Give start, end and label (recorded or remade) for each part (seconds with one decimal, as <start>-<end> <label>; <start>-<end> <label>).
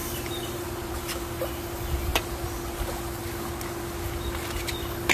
0.0-5.1 recorded